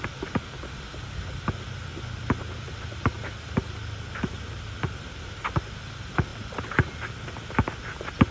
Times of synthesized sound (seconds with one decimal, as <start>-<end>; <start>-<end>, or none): none